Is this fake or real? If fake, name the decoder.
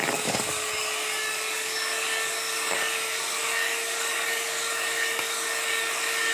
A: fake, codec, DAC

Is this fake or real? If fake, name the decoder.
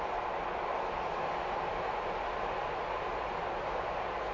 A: real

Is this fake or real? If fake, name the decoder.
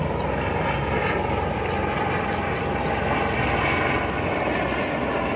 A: real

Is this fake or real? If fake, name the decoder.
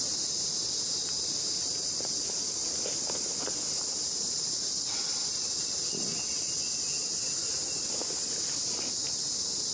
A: real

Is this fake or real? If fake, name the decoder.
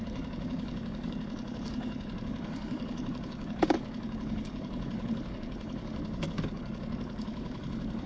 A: fake, codec, DAC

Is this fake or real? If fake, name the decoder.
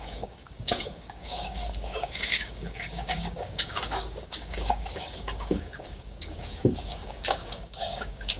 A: fake, codec, DAC